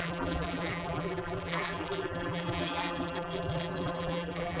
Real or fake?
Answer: fake